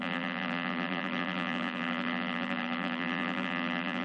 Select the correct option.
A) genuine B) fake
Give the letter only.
B